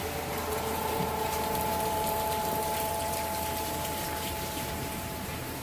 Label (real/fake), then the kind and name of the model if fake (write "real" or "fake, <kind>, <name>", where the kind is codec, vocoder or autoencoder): fake, vocoder, BigVGAN v2